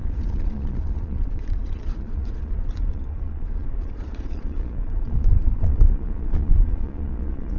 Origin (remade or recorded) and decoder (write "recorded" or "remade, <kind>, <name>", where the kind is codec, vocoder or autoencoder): remade, vocoder, Vocos